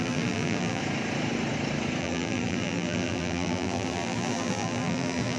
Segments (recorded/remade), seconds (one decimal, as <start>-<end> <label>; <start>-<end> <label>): 0.0-0.8 remade; 0.8-2.0 recorded; 2.0-5.4 remade